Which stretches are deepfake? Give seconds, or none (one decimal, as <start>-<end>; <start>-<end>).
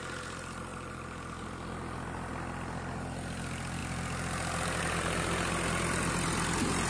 none